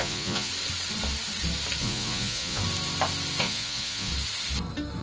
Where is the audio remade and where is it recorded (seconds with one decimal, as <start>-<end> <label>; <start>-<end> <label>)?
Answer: 0.0-0.5 remade; 0.5-1.8 recorded; 1.8-2.6 remade; 2.6-3.4 recorded; 3.4-4.1 remade; 4.1-5.0 recorded